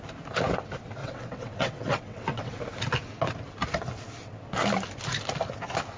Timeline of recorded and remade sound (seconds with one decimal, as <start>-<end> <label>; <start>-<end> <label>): 0.0-1.0 recorded; 1.0-2.6 remade; 2.6-6.0 recorded